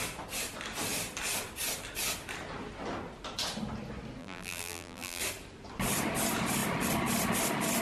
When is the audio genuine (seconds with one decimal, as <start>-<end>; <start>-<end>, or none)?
0.0-4.2; 5.2-7.8